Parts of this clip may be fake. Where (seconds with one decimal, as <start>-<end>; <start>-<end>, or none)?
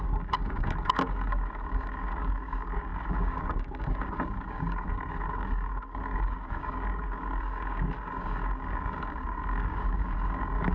0.0-10.7